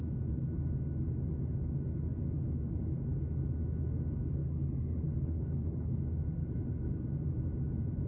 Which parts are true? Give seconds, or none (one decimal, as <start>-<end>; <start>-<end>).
0.0-4.4; 6.0-6.4; 7.0-8.1